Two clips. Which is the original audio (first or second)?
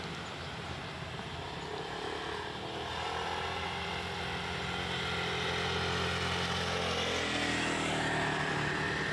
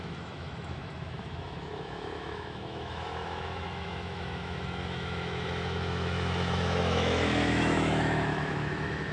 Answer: first